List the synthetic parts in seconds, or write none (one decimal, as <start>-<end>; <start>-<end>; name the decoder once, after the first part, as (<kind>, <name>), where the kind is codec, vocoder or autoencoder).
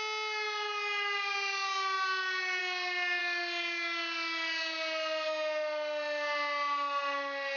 none